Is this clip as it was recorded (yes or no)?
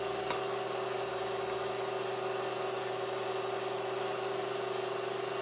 yes